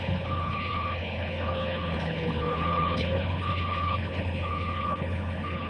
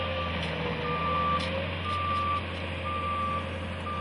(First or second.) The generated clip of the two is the first